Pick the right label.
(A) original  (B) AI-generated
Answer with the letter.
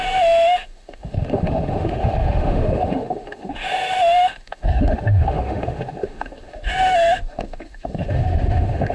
B